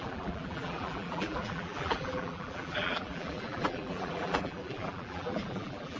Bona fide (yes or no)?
no